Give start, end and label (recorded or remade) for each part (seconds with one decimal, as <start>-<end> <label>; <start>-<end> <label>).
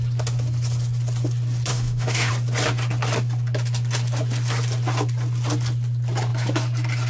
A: 0.0-1.7 recorded; 1.7-2.3 remade; 2.3-7.1 recorded